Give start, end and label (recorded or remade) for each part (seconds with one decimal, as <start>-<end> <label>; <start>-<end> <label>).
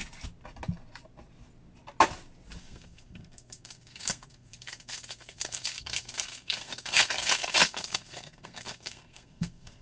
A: 0.0-2.6 recorded; 2.6-9.8 remade